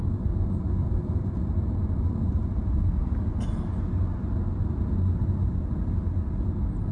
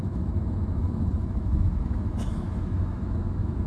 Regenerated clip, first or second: second